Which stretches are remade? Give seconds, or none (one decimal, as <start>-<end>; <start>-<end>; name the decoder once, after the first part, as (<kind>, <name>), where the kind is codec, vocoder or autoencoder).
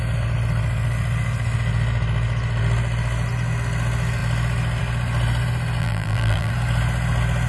5.8-6.5 (vocoder, BigVGAN v2)